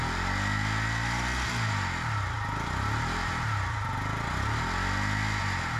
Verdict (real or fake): real